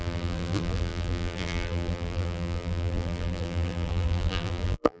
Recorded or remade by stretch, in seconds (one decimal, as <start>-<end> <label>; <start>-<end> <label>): 0.0-5.0 remade